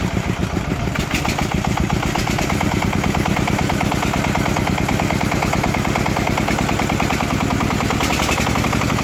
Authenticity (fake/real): real